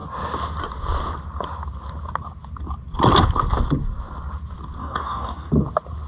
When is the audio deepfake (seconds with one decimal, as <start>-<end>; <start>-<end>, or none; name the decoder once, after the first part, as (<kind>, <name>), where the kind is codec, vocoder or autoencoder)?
4.8-5.5 (codec, DAC)